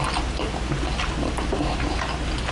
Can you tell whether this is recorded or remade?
recorded